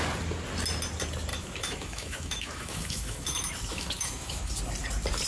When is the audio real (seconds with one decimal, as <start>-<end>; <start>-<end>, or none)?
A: 0.0-1.3; 4.5-5.3